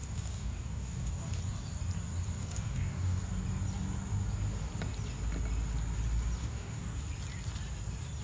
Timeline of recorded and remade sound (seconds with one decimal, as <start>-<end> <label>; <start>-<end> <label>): 0.0-1.4 remade; 1.4-2.4 recorded; 2.4-3.2 remade; 3.2-6.4 recorded; 6.4-7.0 remade; 7.0-8.2 recorded